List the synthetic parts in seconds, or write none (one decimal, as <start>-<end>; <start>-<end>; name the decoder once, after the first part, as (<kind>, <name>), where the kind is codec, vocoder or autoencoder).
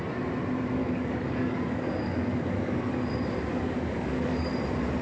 0.8-3.0 (codec, DAC); 3.5-4.5